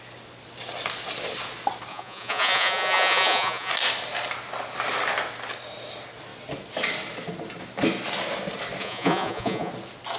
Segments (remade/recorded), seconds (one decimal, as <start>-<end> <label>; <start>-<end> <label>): 0.0-1.9 recorded; 1.9-3.7 remade; 3.7-8.8 recorded; 8.8-9.7 remade; 9.7-10.2 recorded